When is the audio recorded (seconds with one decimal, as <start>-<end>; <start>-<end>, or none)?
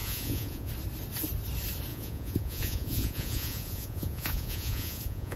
0.7-1.9